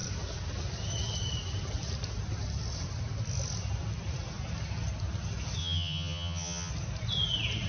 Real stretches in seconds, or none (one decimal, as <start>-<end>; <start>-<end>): 0.0-5.6; 6.7-7.7